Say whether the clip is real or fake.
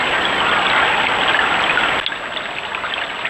real